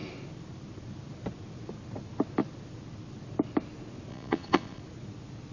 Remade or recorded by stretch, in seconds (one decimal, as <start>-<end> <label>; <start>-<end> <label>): 0.0-4.1 recorded; 4.1-4.8 remade; 4.8-5.5 recorded